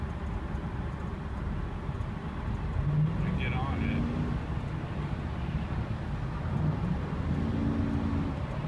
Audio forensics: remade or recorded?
recorded